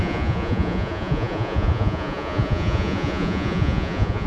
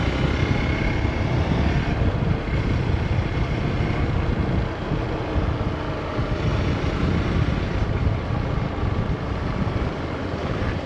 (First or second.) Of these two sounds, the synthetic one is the first